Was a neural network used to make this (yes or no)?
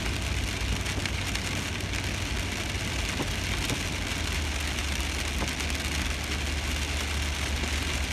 no